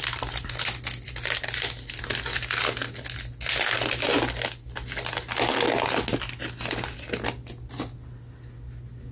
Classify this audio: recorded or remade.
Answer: recorded